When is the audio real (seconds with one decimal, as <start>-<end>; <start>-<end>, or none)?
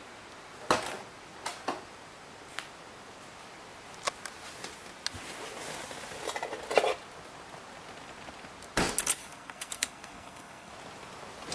0.0-9.2; 10.7-11.5